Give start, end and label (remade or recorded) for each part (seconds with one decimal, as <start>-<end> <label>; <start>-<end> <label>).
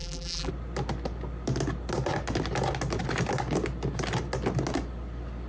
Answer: 0.0-0.5 remade; 0.5-5.5 recorded